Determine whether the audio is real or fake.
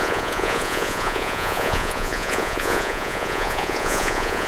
fake